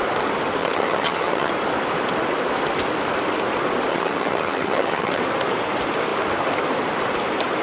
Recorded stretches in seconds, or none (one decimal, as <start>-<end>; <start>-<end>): 0.0-0.6; 1.5-3.9; 5.2-7.6